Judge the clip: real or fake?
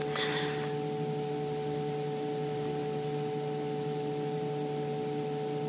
real